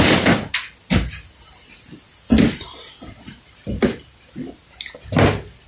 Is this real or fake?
real